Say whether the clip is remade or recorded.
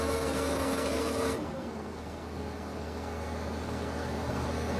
remade